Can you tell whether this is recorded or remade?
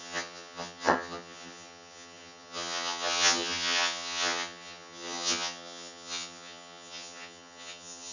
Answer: remade